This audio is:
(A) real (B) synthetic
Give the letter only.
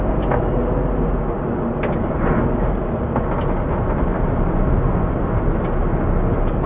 A